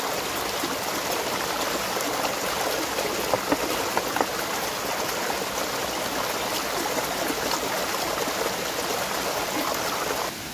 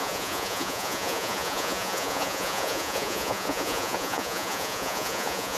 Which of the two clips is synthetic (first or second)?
second